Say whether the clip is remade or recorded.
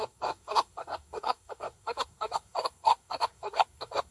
remade